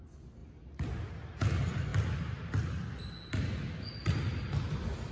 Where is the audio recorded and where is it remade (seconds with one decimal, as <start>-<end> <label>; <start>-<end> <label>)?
0.0-1.9 remade; 1.9-5.1 recorded